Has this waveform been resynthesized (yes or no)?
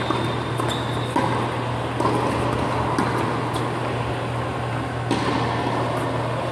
no